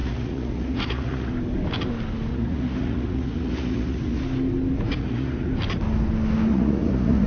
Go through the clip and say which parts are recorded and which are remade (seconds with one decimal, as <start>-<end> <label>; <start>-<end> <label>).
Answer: 0.0-1.3 remade; 1.3-2.3 recorded; 2.3-4.2 remade; 4.2-5.0 recorded; 5.0-5.5 remade; 5.5-6.5 recorded; 6.5-7.3 remade